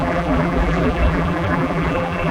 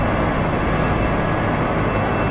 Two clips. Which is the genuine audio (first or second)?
second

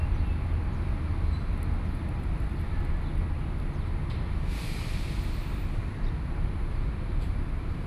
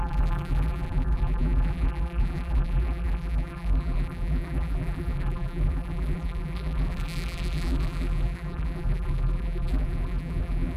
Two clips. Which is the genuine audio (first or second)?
first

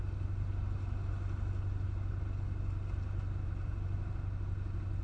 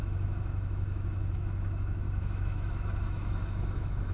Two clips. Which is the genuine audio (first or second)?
first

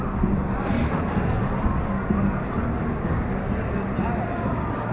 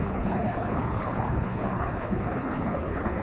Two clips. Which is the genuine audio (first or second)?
first